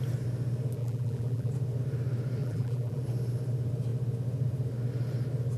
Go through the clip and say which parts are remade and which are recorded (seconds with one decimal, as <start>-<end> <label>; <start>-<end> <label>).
0.0-0.8 recorded; 0.8-1.5 remade; 1.5-2.4 recorded; 2.4-3.0 remade; 3.0-5.6 recorded